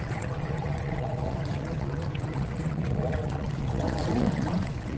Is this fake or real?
fake